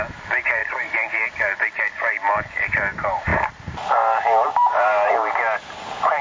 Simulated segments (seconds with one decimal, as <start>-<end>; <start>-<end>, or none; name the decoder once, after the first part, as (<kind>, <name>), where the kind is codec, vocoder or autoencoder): none